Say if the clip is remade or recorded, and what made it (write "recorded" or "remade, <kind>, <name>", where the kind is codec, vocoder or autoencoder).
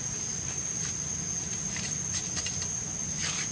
recorded